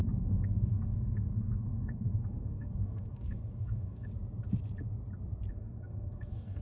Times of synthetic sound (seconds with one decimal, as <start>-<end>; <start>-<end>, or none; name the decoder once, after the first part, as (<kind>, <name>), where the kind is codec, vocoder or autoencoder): 0.0-4.1 (codec, SNAC); 5.5-6.6